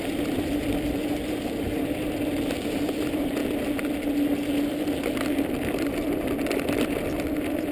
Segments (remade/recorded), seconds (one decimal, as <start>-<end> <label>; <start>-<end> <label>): 0.0-7.7 recorded